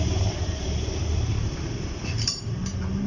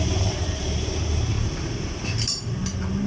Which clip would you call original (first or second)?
second